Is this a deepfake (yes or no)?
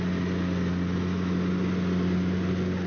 no